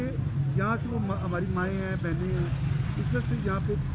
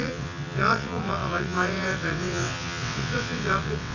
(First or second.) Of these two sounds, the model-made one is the second